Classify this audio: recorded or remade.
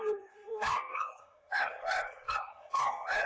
remade